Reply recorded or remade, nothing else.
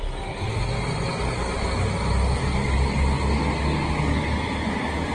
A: recorded